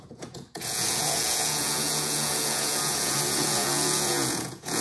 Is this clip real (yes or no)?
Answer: no